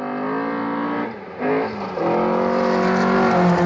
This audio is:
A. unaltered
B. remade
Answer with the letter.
A